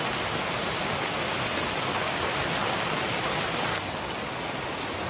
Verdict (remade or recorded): recorded